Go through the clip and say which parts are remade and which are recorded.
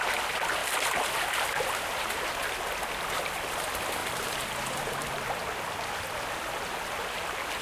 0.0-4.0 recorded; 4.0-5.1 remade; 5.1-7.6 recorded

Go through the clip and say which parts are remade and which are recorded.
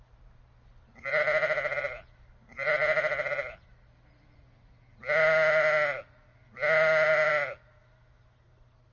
0.0-8.9 recorded